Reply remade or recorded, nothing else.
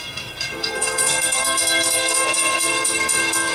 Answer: remade